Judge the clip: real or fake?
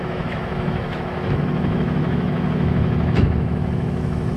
fake